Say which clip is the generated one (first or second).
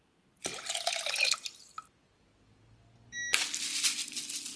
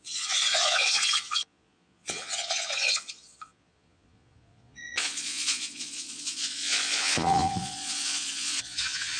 second